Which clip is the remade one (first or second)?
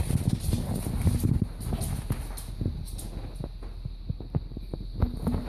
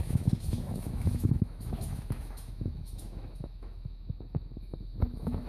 second